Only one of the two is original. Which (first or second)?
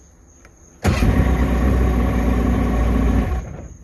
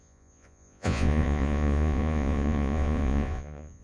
first